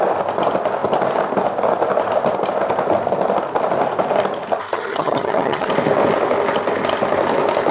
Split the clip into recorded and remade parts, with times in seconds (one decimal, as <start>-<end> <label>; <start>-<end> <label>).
0.0-4.7 recorded; 4.7-5.7 remade; 5.7-7.7 recorded